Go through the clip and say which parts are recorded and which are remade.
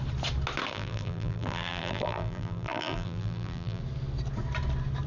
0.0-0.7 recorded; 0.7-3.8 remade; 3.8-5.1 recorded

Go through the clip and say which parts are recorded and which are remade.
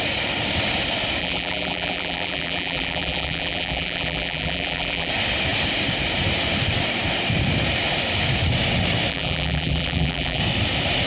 0.0-1.2 recorded; 1.2-5.1 remade; 5.1-9.1 recorded; 9.1-10.4 remade; 10.4-11.1 recorded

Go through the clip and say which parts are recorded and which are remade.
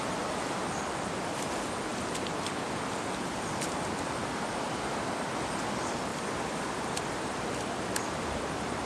0.0-6.1 recorded; 6.1-7.5 remade; 7.5-8.9 recorded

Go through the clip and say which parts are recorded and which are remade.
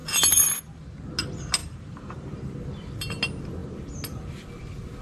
0.0-0.6 remade; 0.6-1.6 recorded; 1.6-2.3 remade; 2.3-5.0 recorded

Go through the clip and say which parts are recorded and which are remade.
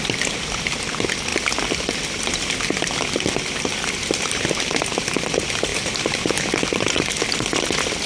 0.0-4.0 recorded; 4.0-4.5 remade; 4.5-5.7 recorded; 5.7-6.3 remade; 6.3-8.1 recorded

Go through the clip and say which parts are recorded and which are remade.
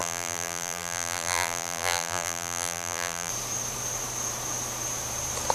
0.0-3.3 remade; 3.3-5.5 recorded